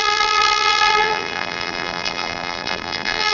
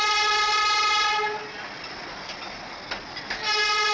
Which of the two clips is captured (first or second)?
second